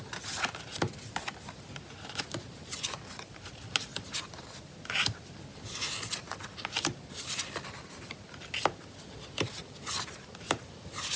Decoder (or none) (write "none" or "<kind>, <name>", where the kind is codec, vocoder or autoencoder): none